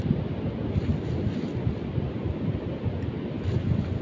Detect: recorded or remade recorded